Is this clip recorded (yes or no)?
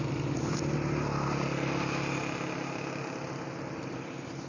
yes